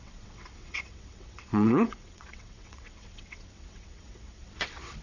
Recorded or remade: remade